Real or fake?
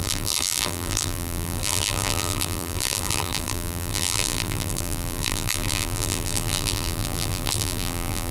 fake